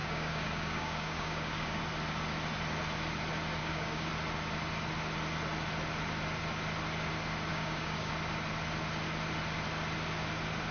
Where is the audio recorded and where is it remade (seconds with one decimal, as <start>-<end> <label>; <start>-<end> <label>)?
0.0-1.8 remade; 1.8-3.6 recorded; 3.6-4.1 remade; 4.1-7.5 recorded; 7.5-8.1 remade; 8.1-10.7 recorded